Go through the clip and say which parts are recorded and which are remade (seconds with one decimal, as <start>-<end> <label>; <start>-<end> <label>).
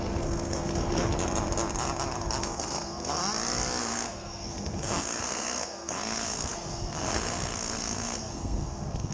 0.0-1.1 remade; 1.1-2.4 recorded; 2.4-3.2 remade; 3.2-3.8 recorded; 3.8-9.1 remade